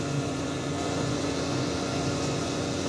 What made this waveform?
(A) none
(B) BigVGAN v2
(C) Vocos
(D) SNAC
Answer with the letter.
C